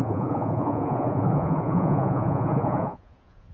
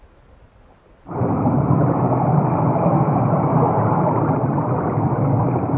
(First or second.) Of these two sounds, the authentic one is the second